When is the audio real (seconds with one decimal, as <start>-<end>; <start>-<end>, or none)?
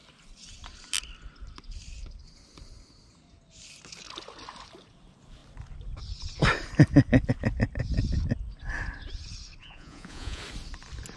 0.0-9.6; 10.4-11.2